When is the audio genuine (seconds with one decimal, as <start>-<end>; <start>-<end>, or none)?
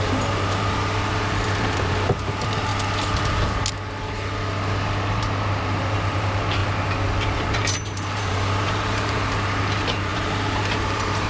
2.7-5.1; 6.6-7.2